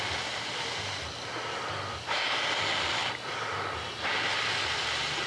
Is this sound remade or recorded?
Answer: recorded